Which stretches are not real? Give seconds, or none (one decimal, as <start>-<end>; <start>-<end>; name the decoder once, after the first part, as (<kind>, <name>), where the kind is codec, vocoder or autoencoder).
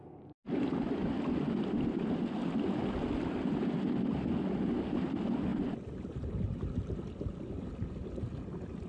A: none